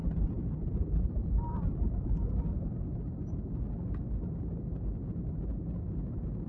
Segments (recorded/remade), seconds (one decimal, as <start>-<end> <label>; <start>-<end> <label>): 0.0-6.5 recorded